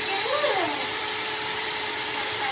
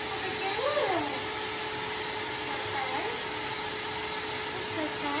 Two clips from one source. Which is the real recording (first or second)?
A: second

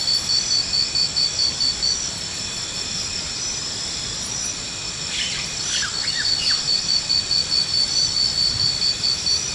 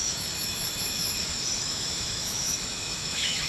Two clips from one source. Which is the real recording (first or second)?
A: first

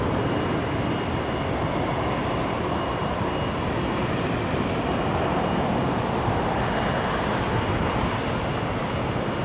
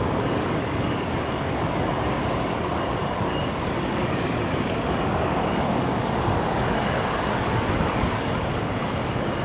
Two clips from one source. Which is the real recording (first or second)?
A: first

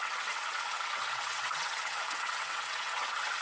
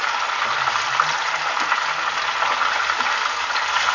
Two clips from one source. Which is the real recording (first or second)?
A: second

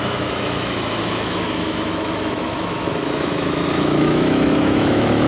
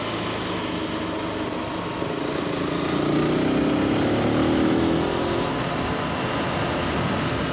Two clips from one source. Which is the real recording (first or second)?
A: second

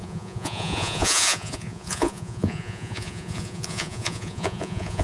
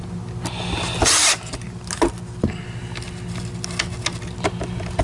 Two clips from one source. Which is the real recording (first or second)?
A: second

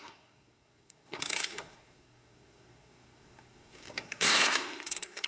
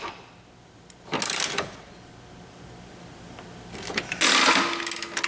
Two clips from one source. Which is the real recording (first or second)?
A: second